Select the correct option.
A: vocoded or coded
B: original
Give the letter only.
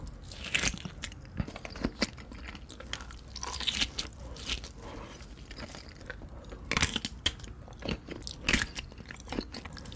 B